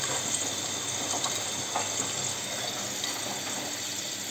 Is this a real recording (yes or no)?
yes